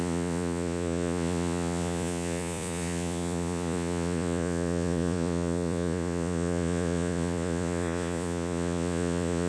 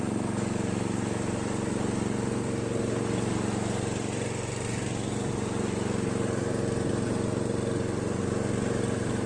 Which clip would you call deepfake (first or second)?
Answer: first